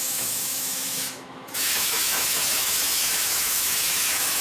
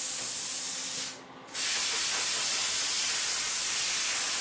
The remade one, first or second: first